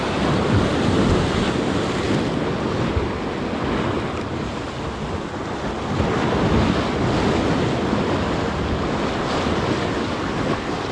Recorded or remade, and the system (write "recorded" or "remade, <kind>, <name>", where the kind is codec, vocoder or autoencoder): recorded